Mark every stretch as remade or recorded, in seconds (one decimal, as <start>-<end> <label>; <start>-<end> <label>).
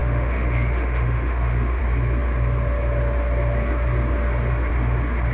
0.0-1.8 remade; 1.8-5.3 recorded